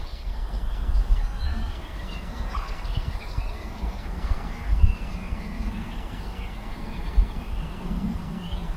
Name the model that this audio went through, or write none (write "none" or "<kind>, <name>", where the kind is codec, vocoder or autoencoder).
codec, SNAC